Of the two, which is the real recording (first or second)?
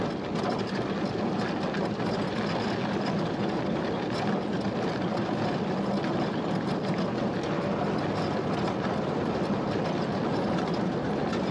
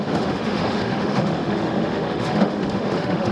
first